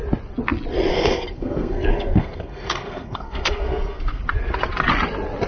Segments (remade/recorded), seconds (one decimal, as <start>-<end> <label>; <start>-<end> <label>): 0.0-0.9 recorded; 0.9-4.2 remade; 4.2-5.5 recorded